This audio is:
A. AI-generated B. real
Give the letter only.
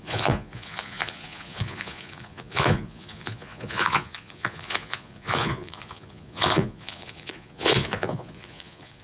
A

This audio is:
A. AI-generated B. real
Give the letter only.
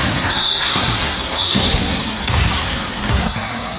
A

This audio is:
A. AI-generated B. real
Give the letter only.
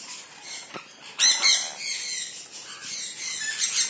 B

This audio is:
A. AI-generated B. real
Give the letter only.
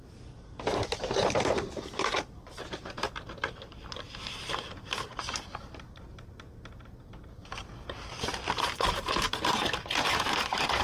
A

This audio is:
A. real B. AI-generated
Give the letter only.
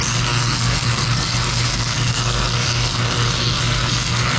B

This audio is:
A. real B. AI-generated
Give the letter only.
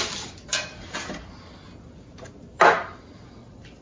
A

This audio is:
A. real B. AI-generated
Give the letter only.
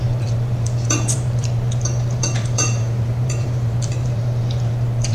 B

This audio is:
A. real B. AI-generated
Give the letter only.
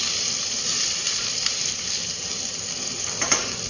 A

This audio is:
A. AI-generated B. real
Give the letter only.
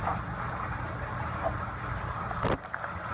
B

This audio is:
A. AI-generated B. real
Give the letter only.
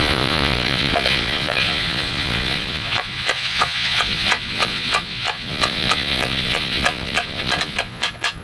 A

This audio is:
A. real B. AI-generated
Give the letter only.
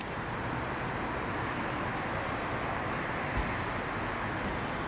A